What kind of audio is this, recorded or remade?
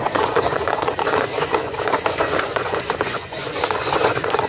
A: remade